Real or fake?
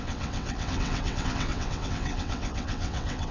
fake